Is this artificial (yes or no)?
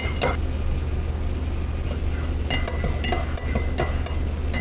no